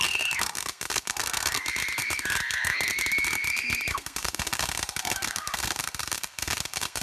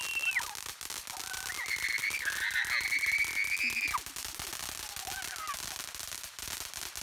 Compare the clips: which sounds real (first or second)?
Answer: second